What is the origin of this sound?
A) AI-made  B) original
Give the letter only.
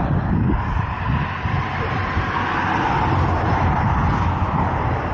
B